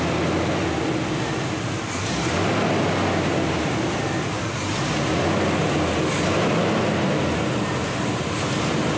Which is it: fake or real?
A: real